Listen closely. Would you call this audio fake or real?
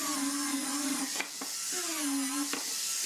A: real